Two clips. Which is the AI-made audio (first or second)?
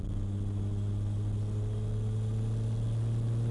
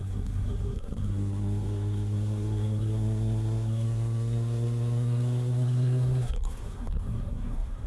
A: second